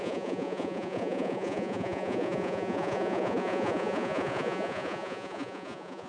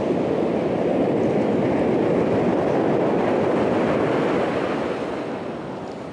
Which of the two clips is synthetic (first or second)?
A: first